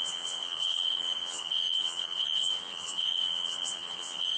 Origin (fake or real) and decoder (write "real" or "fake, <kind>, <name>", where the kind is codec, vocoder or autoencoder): fake, vocoder, HiFi-GAN